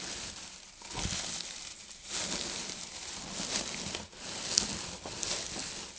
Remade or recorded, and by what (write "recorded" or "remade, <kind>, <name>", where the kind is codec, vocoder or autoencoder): recorded